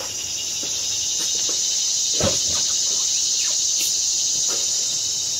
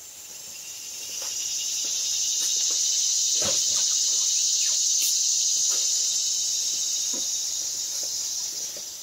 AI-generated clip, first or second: second